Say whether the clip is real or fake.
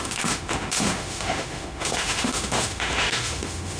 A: fake